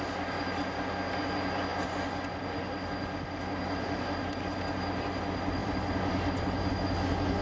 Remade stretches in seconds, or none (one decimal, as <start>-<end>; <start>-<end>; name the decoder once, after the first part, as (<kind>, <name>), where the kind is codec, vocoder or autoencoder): 5.6-6.7 (vocoder, BigVGAN v2)